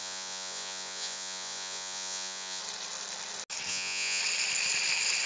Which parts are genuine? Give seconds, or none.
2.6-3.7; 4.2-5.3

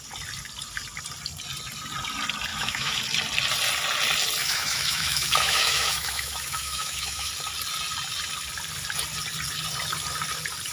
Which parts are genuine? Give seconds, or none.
0.0-2.5; 3.0-4.4; 7.3-10.7

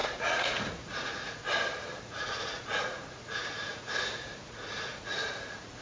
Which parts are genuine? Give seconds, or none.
1.4-2.0

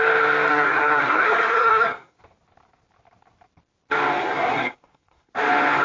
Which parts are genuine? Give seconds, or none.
0.0-0.5; 2.2-4.2; 5.3-5.8

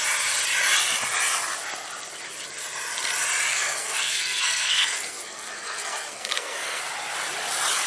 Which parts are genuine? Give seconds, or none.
0.0-3.5; 6.8-7.9

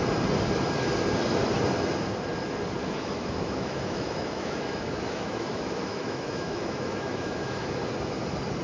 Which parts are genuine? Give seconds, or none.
0.0-2.8; 7.7-8.6

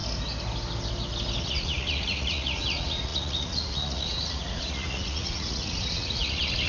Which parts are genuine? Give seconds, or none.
0.0-1.4